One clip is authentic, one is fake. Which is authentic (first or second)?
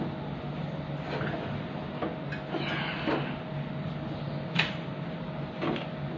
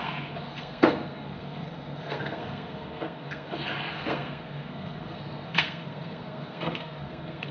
first